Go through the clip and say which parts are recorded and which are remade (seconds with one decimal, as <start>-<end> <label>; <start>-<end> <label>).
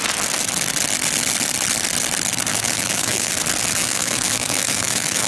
0.0-2.5 recorded; 2.5-3.3 remade; 3.3-3.8 recorded; 3.8-5.3 remade